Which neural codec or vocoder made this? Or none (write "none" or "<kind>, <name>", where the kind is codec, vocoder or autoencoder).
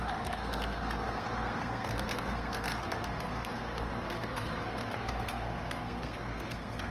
codec, SNAC